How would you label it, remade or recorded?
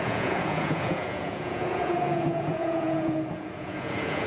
remade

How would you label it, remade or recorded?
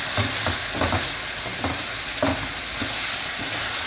recorded